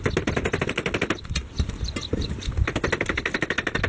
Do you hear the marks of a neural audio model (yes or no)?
no